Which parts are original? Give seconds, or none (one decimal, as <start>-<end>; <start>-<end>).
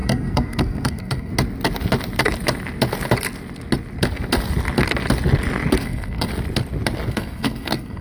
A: 1.3-5.8; 6.3-7.1